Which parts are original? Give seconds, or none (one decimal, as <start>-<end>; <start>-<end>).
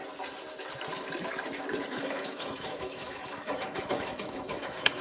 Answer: 0.0-1.9